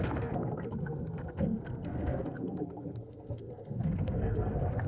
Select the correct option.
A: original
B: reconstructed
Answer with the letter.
B